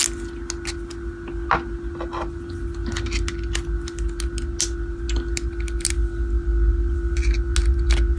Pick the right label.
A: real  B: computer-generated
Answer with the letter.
A